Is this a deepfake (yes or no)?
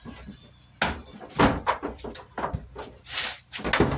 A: no